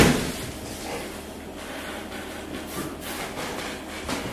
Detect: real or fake real